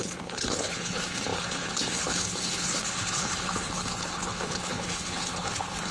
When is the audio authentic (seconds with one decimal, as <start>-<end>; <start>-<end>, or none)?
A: none